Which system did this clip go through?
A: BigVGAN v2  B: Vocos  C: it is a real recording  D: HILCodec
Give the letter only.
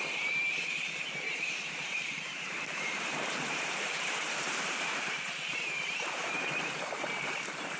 A